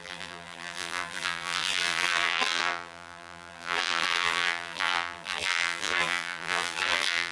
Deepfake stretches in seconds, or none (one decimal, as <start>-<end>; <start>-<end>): 0.0-7.3